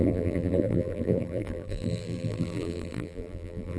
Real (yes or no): no